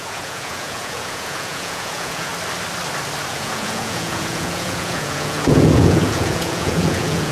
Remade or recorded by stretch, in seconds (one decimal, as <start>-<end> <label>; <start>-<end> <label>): 0.0-2.3 remade; 2.3-3.3 recorded; 3.3-7.3 remade